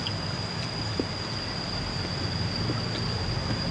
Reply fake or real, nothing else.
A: real